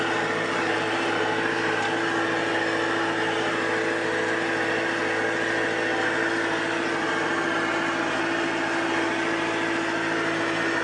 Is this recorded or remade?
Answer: recorded